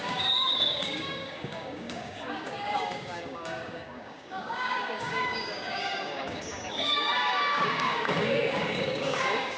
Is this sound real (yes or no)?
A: no